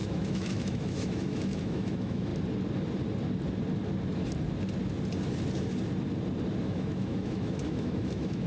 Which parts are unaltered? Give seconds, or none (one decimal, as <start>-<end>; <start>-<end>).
2.3-6.6